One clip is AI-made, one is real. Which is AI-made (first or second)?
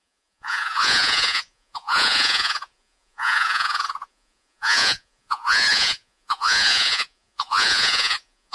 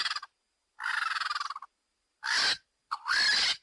first